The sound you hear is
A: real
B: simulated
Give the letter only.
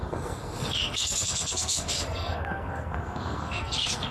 B